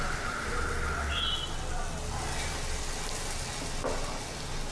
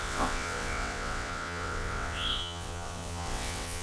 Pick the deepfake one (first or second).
second